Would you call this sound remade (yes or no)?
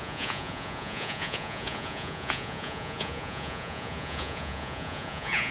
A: yes